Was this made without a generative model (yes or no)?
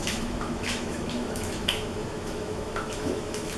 no